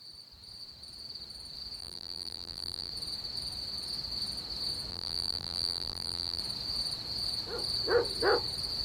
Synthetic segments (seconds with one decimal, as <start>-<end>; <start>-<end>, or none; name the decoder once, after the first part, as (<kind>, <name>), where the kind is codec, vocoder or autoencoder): 1.8-2.9 (vocoder, BigVGAN v2); 4.9-6.4